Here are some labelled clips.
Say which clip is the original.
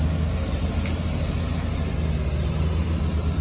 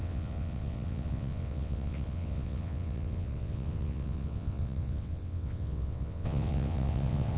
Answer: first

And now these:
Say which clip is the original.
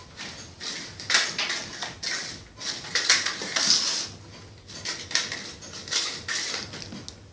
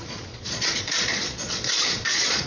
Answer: first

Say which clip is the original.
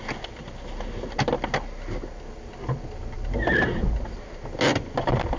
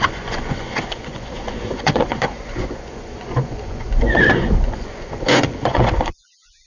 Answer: first